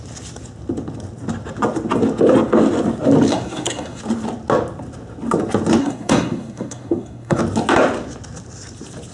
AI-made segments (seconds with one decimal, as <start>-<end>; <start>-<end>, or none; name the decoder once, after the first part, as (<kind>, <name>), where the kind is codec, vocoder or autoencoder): 3.3-4.0 (codec, SNAC); 5.8-7.4